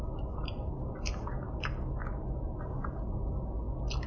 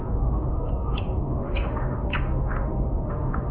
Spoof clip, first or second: second